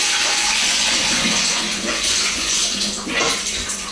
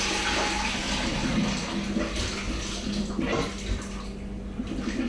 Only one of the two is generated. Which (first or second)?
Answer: first